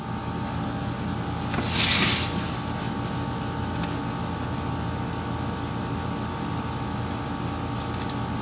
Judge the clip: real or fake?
real